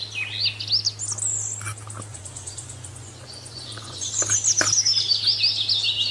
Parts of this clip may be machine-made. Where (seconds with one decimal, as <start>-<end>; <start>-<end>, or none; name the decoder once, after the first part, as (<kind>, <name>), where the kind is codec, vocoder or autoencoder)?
2.1-4.1 (vocoder, Vocos)